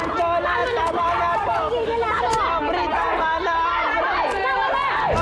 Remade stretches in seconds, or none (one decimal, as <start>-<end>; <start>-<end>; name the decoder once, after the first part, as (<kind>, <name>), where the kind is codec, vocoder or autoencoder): none